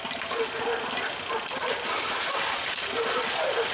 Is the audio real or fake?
real